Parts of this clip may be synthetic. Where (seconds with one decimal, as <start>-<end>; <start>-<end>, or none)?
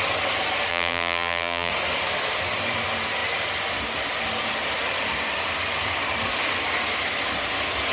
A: 0.7-1.7